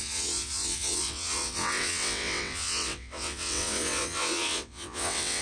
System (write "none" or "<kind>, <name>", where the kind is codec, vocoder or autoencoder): vocoder, WaveNeXt